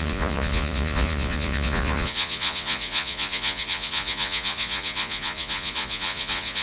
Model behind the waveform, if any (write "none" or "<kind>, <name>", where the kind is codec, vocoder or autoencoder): vocoder, Vocos